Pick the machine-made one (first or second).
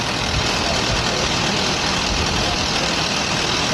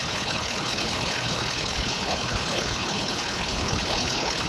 second